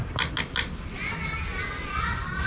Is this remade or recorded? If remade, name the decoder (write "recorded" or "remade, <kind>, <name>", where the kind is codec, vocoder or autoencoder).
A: recorded